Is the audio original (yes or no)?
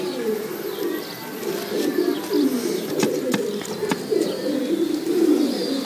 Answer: yes